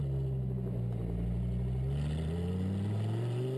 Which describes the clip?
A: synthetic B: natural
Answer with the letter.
B